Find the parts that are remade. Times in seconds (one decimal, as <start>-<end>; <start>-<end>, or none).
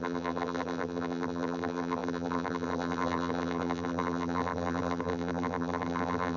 0.0-6.4